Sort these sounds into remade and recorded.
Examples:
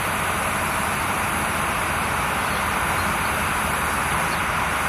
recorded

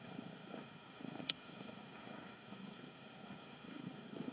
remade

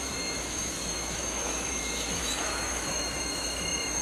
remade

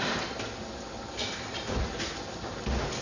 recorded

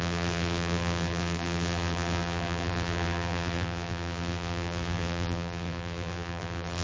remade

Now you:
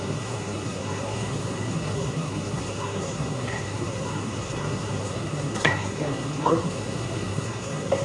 remade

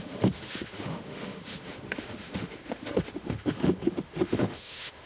remade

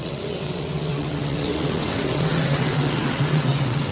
remade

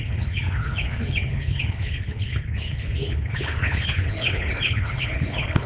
remade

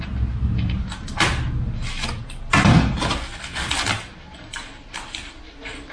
recorded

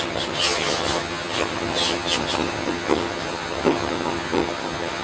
remade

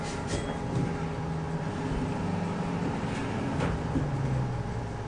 recorded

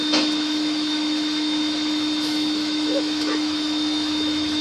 remade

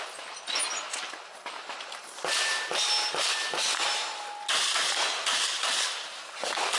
recorded